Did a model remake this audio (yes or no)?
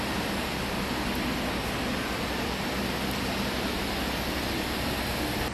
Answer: no